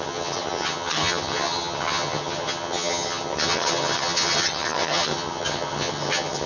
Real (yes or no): no